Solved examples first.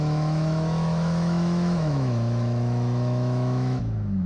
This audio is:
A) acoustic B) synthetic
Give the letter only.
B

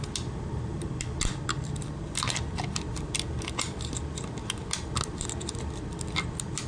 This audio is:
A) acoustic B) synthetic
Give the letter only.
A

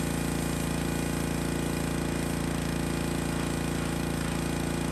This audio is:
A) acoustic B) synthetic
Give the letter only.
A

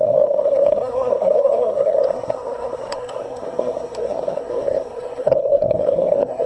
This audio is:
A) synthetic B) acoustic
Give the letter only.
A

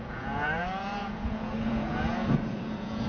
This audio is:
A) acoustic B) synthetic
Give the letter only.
B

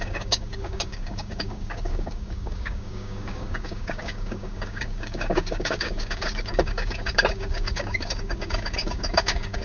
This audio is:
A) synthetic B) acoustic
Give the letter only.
A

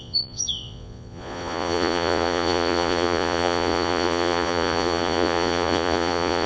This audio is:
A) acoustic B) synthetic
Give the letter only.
B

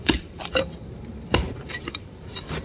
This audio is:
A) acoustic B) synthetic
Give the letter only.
B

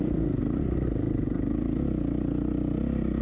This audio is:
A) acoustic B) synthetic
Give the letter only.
A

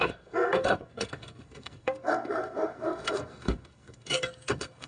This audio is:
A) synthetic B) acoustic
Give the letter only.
A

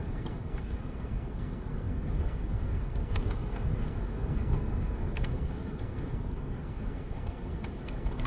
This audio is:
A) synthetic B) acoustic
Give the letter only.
A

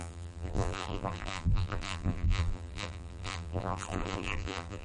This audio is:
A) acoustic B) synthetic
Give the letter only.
B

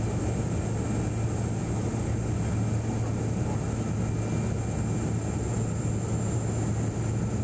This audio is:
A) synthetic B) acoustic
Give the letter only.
B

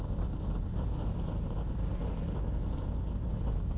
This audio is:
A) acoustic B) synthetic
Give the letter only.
A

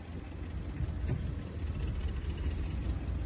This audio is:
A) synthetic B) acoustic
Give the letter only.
B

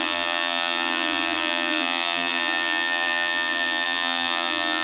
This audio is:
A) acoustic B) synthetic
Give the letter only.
B